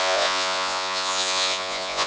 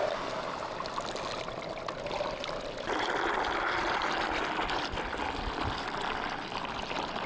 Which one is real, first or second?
second